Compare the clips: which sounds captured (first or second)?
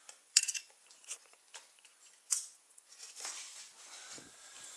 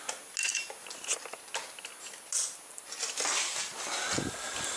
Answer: second